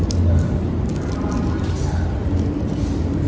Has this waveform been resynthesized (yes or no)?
no